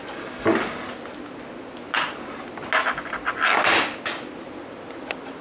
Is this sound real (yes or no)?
yes